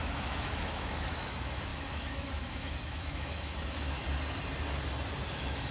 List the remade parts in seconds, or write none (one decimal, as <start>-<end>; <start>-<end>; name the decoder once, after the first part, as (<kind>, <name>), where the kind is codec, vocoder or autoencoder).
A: 0.0-4.0 (autoencoder, DAC-VAE); 5.3-5.7

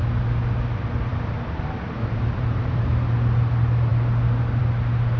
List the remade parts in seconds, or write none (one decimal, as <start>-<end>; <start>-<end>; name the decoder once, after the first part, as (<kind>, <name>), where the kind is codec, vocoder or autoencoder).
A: 1.1-2.9 (vocoder, BigVGAN v2)

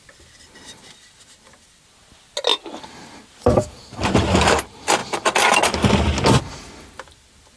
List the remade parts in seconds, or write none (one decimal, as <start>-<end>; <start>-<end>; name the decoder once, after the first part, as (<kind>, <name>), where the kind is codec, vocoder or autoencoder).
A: none

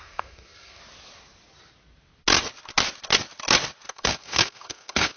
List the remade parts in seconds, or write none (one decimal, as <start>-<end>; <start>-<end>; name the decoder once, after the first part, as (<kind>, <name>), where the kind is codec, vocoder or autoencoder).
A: 0.0-0.8 (codec, SNAC); 3.9-5.2